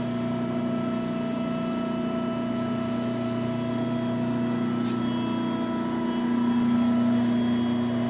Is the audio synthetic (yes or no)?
no